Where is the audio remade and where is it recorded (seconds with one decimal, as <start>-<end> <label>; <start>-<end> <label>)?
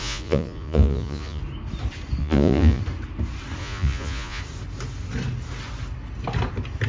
0.0-1.4 remade; 1.4-2.2 recorded; 2.2-2.8 remade; 2.8-3.6 recorded; 3.6-4.4 remade; 4.4-6.9 recorded